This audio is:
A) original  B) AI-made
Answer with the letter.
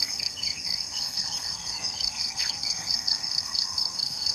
B